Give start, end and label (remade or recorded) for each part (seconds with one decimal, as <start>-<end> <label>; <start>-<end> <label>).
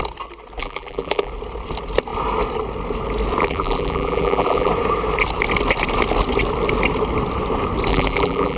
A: 0.0-0.6 recorded; 0.6-1.3 remade; 1.3-3.4 recorded; 3.4-4.7 remade; 4.7-7.9 recorded; 7.9-8.6 remade